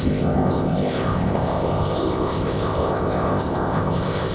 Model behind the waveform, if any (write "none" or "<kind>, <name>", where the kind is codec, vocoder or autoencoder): codec, ZipCodec